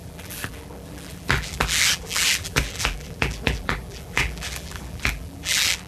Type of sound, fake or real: fake